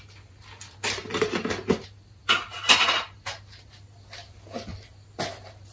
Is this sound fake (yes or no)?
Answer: no